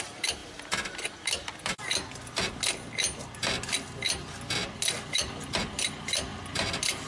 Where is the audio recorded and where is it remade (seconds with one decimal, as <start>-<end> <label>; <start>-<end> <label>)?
0.0-7.1 recorded